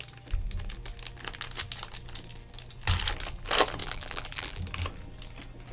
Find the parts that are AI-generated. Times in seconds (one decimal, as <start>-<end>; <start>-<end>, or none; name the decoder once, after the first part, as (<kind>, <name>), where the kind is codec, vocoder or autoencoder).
3.8-4.6 (vocoder, BigVGAN v2)